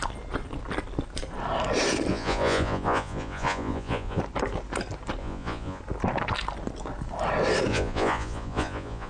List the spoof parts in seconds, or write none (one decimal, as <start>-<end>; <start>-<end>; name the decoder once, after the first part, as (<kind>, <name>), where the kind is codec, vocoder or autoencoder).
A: 2.1-4.2 (vocoder, Vocos); 5.2-5.8; 7.7-9.1